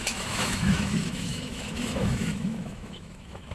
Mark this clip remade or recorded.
remade